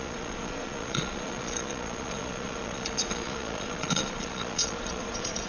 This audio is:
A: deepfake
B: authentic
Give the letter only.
A